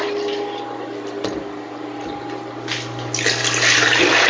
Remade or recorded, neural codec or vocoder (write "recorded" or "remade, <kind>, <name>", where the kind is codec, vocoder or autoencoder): recorded